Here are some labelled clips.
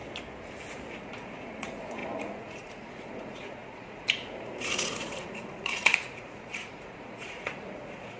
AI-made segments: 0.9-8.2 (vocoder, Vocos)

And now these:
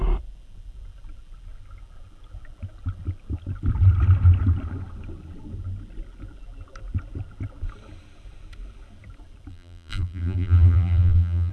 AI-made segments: 9.5-11.5 (vocoder, BigVGAN v2)

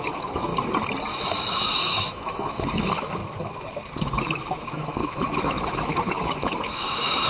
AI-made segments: 0.0-0.5 (autoencoder, DAC-VAE); 1.5-3.2; 4.0-7.3